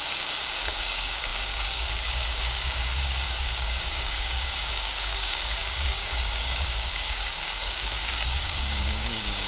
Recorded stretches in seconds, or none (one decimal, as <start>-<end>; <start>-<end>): none